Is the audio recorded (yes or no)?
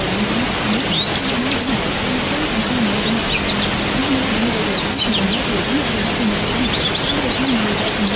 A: yes